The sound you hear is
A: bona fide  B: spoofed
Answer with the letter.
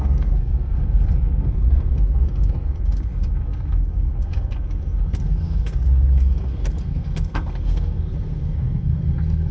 B